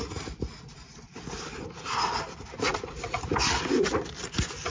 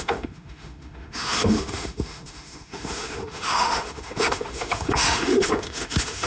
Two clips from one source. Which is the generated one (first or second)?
second